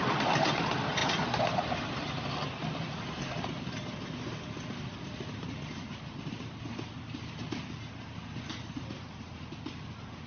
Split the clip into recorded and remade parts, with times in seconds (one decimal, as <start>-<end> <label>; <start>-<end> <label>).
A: 0.0-10.3 recorded